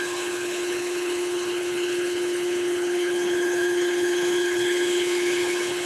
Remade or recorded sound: remade